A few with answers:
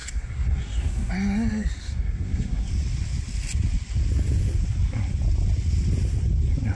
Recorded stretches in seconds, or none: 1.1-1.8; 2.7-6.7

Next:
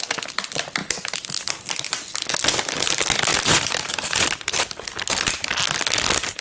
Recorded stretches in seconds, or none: 0.0-3.3; 4.7-6.4